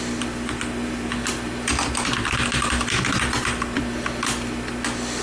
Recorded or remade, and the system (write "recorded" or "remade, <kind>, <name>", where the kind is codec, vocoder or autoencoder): recorded